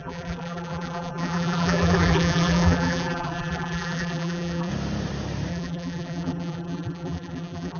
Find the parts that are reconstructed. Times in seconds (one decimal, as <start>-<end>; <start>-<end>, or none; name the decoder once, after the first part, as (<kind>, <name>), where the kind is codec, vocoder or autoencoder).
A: 0.0-4.7 (vocoder, BigVGAN v2); 5.5-7.8

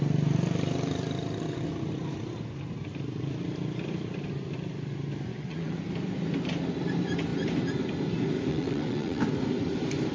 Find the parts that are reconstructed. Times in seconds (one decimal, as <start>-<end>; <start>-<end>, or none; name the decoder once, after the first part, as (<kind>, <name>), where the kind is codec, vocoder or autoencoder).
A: 5.3-5.8 (vocoder, WaveNeXt); 8.5-9.2

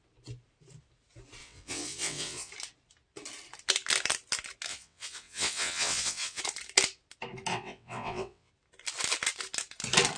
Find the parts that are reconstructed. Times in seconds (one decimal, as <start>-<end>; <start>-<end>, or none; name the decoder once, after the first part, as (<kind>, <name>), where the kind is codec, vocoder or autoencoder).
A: 1.4-2.5 (vocoder, WaveNeXt); 4.7-6.4; 7.5-8.5

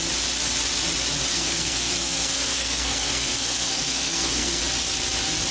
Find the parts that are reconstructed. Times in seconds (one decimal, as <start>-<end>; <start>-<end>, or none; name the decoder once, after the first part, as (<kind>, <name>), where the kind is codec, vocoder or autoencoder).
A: 1.3-4.6 (codec, SNAC)

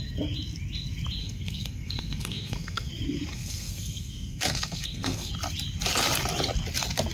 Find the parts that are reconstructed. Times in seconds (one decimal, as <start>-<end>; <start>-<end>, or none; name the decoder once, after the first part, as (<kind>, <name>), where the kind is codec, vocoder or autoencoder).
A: 1.2-2.9 (codec, SNAC); 3.3-5.3

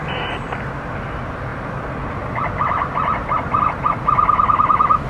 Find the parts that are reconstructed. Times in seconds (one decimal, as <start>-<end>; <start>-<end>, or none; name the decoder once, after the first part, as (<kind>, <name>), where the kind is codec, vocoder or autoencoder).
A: none

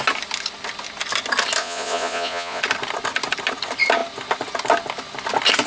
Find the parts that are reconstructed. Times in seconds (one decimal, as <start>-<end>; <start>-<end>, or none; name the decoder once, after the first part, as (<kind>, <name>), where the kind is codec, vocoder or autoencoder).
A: 1.6-2.6 (vocoder, Vocos)